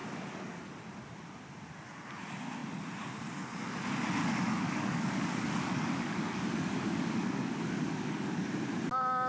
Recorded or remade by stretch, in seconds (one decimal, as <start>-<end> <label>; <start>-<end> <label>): 0.0-0.7 remade; 0.7-4.2 recorded; 4.2-8.5 remade; 8.5-9.3 recorded